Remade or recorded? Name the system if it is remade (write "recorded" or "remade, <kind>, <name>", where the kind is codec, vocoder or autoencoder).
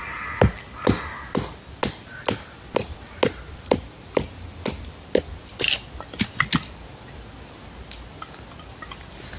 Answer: recorded